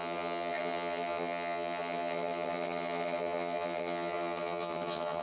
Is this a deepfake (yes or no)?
yes